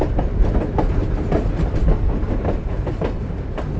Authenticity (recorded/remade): recorded